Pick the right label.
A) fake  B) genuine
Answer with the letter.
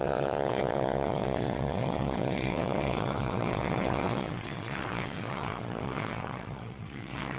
A